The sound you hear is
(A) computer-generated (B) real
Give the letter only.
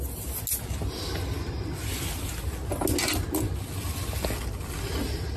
B